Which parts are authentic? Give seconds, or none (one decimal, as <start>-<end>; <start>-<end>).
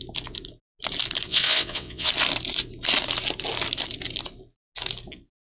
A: 0.0-1.3; 2.1-5.6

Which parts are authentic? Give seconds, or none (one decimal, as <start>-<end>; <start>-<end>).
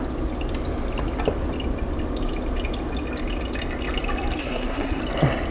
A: 0.0-4.4; 5.0-5.5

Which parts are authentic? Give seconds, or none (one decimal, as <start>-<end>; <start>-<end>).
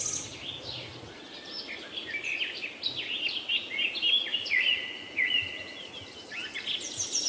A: 0.0-4.3; 5.9-7.3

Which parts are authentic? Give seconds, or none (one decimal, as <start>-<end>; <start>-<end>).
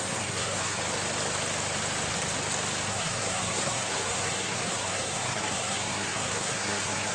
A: 0.8-2.9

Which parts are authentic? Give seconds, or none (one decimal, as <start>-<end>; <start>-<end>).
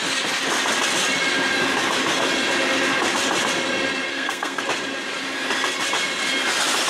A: 0.0-4.1; 4.6-6.9